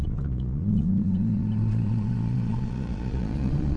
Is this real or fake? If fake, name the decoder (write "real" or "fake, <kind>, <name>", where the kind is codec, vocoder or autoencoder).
fake, vocoder, Vocos